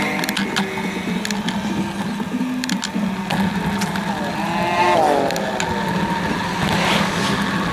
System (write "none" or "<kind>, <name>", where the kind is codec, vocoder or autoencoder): none